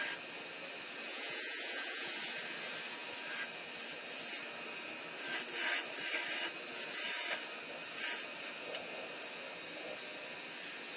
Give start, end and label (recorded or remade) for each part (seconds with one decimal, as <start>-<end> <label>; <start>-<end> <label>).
0.0-1.1 recorded; 1.1-2.1 remade; 2.1-11.0 recorded